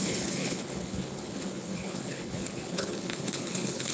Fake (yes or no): yes